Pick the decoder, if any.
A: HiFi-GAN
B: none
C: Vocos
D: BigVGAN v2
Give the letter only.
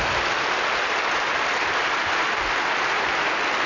B